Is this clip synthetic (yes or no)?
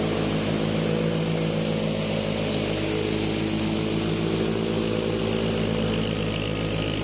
no